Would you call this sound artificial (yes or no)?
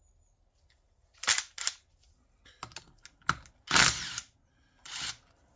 no